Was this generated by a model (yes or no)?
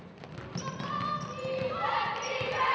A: no